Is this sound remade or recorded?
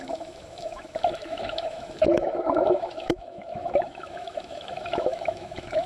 remade